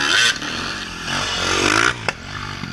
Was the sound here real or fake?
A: fake